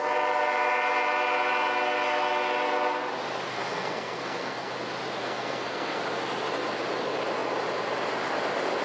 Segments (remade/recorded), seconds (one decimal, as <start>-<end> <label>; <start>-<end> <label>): 0.0-3.5 recorded; 3.5-4.7 remade; 4.7-5.2 recorded; 5.2-6.0 remade; 6.0-8.8 recorded